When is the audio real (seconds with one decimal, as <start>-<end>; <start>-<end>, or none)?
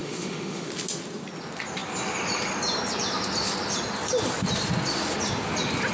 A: 0.7-5.9